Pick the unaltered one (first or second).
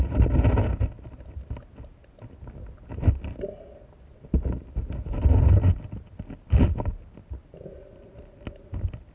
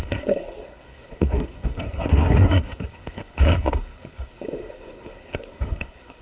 first